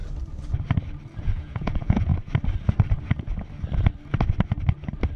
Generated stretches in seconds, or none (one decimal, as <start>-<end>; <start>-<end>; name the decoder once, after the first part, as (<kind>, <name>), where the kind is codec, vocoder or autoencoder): 1.2-2.1 (vocoder, Vocos)